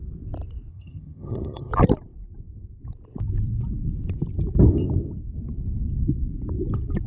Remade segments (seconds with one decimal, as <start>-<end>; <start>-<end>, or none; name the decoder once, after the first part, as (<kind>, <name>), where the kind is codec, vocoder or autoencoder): 0.7-1.7 (vocoder, HiFi-GAN)